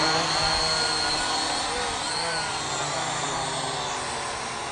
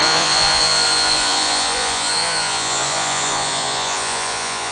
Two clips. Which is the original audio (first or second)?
first